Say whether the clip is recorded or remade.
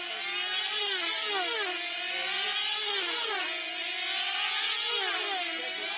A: recorded